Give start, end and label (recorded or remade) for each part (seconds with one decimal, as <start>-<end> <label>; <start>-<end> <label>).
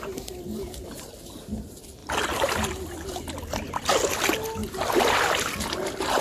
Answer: 0.0-2.0 recorded; 2.0-2.7 remade; 2.7-4.6 recorded; 4.6-5.5 remade; 5.5-6.2 recorded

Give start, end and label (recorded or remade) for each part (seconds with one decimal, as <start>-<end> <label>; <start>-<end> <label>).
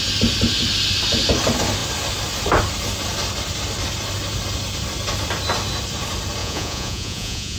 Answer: 0.0-6.4 recorded; 6.4-7.6 remade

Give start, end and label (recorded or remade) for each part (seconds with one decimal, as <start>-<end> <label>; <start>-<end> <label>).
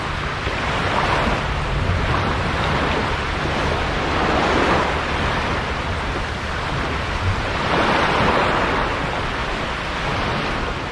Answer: 0.0-10.9 recorded